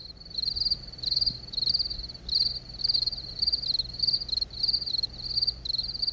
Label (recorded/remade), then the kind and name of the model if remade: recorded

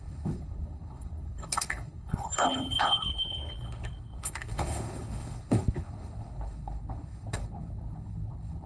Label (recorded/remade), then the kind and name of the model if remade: remade, codec, HILCodec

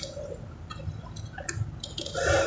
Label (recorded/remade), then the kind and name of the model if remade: recorded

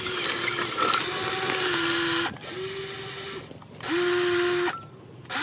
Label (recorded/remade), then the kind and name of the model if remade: recorded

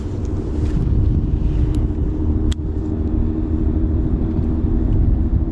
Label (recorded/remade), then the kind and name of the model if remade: recorded